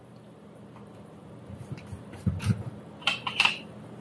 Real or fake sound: fake